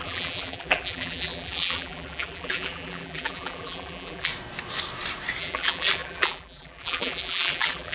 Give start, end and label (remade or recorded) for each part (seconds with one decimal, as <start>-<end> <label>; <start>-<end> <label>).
0.0-4.3 remade; 4.3-5.4 recorded; 5.4-7.9 remade